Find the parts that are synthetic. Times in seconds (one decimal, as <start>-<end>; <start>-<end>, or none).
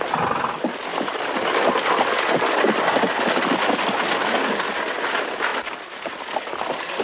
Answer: none